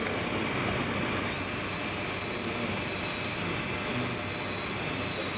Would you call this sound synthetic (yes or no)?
no